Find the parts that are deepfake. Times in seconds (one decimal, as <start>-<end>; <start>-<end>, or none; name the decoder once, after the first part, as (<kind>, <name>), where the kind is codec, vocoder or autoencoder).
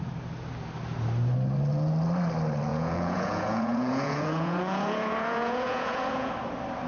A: 2.7-6.3 (vocoder, Vocos)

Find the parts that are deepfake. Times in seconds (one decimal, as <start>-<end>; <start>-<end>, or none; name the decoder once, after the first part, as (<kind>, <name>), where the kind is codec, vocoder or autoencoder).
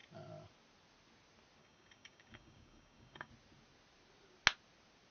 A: 1.6-3.3 (codec, DAC)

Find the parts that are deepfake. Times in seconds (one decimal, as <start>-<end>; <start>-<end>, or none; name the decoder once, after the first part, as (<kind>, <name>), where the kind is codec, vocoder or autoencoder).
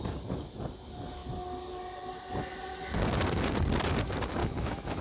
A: 4.4-5.0 (autoencoder, DAC-VAE)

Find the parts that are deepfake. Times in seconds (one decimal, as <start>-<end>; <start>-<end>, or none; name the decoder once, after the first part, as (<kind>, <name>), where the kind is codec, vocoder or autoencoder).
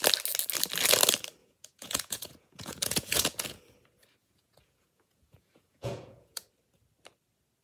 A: 1.4-3.6 (vocoder, Vocos); 4.2-6.5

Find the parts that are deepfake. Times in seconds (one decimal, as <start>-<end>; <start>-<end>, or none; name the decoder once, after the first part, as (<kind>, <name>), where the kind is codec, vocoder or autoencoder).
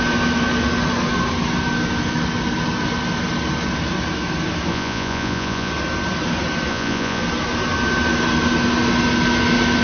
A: 4.7-5.7 (vocoder, Vocos); 6.7-7.2